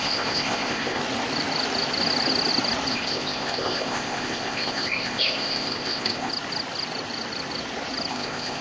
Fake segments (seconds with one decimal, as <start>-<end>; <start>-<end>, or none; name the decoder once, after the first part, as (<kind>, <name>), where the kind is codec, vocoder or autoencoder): 0.0-1.0 (codec, ZipCodec); 2.9-6.3; 8.1-8.6